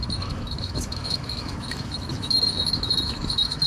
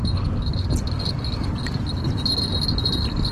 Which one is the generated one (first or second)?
first